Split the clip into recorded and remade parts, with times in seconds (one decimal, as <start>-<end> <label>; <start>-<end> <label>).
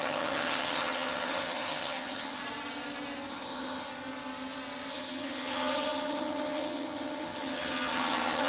0.0-2.4 remade; 2.4-3.3 recorded; 3.3-3.9 remade; 3.9-4.9 recorded; 4.9-8.5 remade